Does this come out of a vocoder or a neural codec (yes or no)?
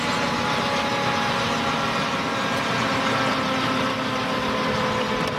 no